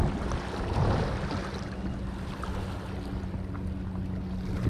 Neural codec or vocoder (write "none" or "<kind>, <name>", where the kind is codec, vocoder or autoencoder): none